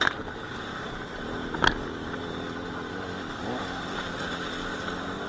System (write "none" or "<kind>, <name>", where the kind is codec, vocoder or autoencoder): none